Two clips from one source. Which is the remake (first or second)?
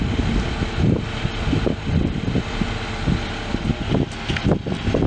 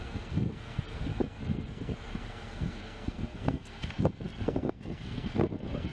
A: second